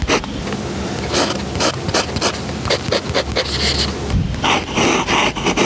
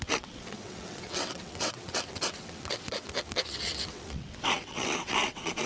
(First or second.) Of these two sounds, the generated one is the second